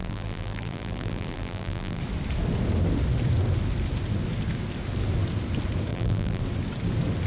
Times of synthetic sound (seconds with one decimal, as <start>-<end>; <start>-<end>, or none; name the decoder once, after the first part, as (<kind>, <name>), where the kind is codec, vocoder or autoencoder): 0.0-2.0 (vocoder, BigVGAN v2); 5.9-6.4